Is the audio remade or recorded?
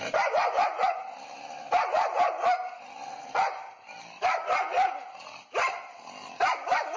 recorded